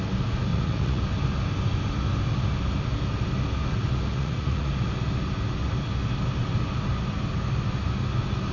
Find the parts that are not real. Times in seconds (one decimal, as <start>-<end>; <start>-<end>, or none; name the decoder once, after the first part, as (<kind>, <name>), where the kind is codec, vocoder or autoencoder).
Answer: 0.5-1.0 (vocoder, Vocos); 4.1-4.7

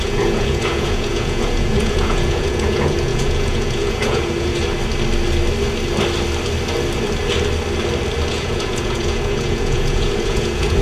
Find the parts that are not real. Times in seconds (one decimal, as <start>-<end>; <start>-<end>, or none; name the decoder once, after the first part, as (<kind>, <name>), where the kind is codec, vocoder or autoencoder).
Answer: 0.0-4.5 (vocoder, Vocos); 8.3-10.8

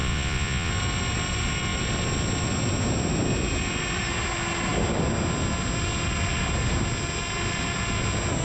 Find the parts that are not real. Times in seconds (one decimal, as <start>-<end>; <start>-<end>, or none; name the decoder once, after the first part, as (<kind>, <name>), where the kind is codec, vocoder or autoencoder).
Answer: 0.0-0.7 (vocoder, Vocos)

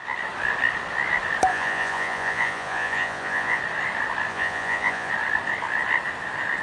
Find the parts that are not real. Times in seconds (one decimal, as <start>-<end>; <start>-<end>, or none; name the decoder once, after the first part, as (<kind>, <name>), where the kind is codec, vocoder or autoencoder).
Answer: 1.5-3.6 (vocoder, Vocos); 4.3-5.1

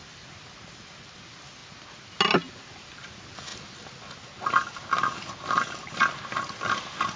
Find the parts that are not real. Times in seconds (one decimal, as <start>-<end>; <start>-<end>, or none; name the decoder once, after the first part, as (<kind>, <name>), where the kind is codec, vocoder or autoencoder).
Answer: none

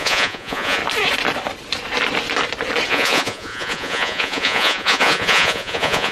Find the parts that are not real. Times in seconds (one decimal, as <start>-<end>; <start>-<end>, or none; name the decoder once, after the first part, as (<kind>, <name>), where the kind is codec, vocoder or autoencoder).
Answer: 0.0-0.8 (vocoder, Vocos); 2.9-6.1

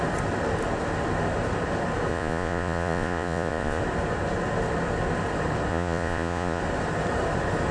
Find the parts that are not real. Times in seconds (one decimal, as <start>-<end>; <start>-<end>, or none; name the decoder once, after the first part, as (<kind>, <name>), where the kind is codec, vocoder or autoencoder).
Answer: 2.1-3.8 (vocoder, Vocos); 5.7-6.6

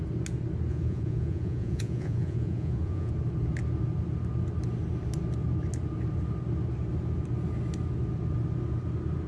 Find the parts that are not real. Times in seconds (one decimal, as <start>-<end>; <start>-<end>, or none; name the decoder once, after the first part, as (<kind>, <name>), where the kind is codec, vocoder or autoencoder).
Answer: 0.7-3.1 (vocoder, Vocos)